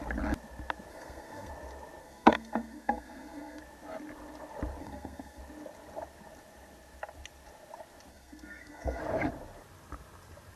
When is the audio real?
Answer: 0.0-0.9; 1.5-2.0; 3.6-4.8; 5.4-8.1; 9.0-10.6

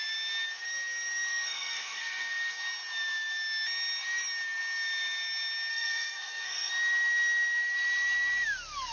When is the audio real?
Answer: 0.0-1.3; 2.6-5.7; 6.7-8.9

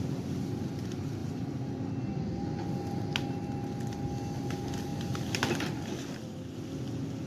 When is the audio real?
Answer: 0.0-1.2; 1.9-4.9; 6.1-7.3

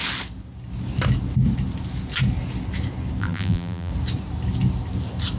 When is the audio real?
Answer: 0.0-3.2; 3.9-5.4

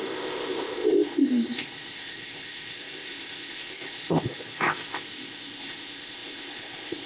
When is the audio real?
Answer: none